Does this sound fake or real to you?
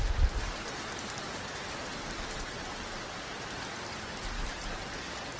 real